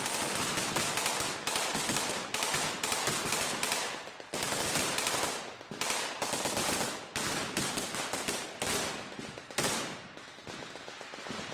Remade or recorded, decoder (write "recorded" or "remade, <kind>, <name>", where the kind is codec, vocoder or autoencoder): recorded